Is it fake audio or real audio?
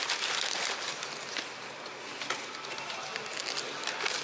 real